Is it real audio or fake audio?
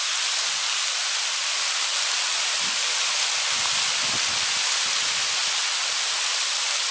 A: real